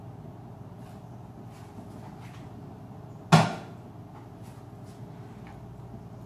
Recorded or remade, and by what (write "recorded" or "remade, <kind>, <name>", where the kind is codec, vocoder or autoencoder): recorded